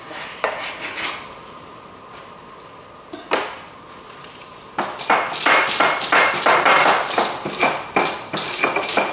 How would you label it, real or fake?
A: real